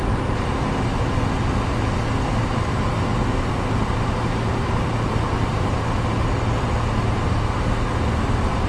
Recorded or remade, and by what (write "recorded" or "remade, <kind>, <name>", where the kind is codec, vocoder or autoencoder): recorded